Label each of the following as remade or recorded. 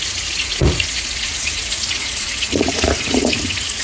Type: remade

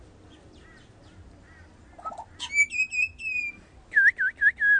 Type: recorded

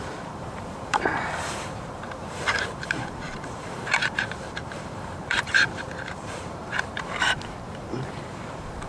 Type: remade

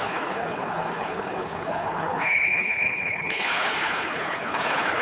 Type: remade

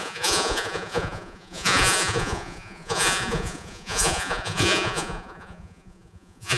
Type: remade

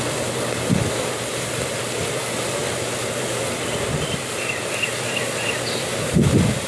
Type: remade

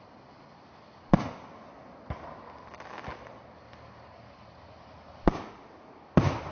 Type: recorded